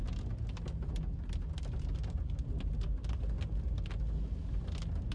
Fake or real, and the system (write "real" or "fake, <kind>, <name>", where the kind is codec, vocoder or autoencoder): real